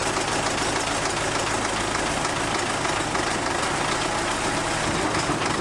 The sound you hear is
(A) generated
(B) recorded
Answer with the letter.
B